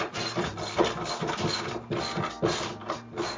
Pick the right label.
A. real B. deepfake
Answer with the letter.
A